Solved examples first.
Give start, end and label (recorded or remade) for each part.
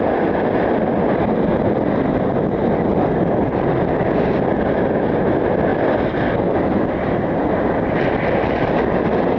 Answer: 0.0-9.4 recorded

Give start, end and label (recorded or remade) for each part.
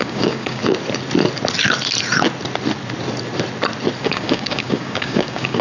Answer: 0.0-0.6 remade; 0.6-4.0 recorded; 4.0-5.6 remade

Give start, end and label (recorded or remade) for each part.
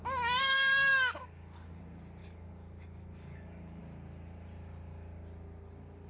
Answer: 0.0-0.4 recorded; 0.4-1.8 remade; 1.8-2.2 recorded; 2.2-3.8 remade; 3.8-6.1 recorded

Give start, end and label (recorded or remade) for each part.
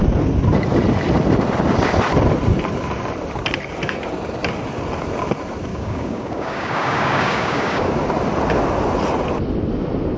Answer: 0.0-5.7 recorded; 5.7-7.9 remade; 7.9-10.2 recorded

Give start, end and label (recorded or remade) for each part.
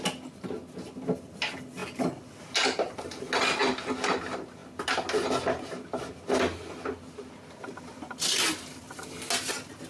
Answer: 0.0-9.9 recorded